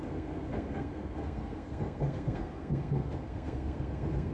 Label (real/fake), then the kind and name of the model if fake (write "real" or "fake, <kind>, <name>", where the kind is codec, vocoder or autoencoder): fake, codec, SNAC